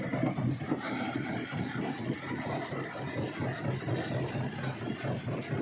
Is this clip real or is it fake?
real